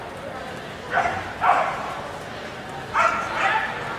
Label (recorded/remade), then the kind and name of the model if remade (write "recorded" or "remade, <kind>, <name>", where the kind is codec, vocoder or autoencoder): recorded